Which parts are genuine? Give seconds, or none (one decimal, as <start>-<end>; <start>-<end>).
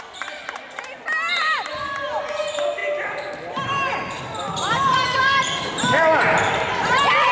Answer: 0.0-4.9; 5.7-7.3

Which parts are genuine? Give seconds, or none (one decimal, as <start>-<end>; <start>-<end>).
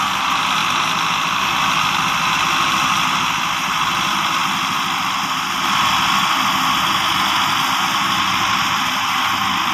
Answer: 0.0-0.6; 1.4-8.0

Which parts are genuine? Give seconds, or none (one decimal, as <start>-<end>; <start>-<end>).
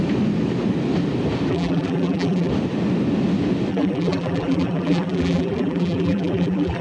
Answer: 0.0-1.5; 2.5-3.7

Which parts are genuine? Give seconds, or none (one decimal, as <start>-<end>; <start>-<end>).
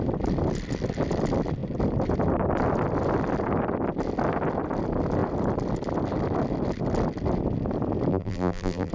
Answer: 0.0-8.1